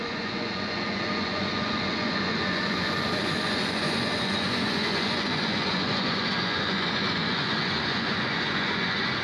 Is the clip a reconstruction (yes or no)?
yes